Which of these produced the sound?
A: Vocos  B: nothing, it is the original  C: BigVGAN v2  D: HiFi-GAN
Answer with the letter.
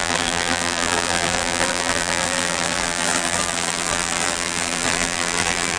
C